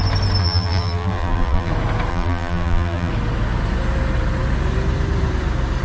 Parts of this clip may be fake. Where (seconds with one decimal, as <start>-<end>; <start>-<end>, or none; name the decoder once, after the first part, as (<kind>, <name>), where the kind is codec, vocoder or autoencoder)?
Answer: 0.4-1.7 (vocoder, BigVGAN v2); 2.1-3.1